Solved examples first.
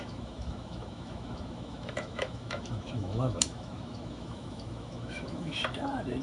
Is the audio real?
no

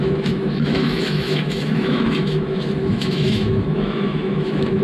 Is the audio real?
no